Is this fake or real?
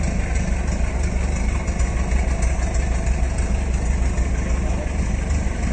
real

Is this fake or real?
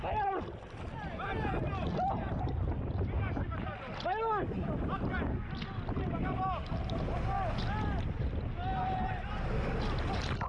real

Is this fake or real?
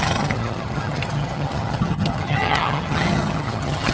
fake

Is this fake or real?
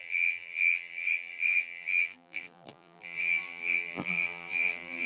fake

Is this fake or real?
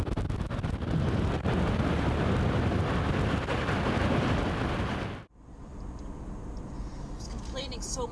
real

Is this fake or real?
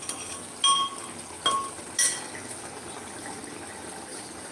real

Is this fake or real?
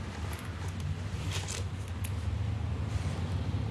real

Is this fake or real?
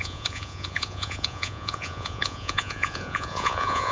fake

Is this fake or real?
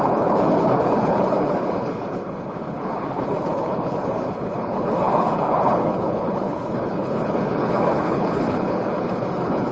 fake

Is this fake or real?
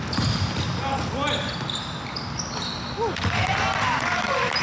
real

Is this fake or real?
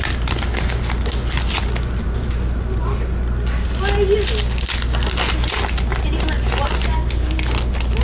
real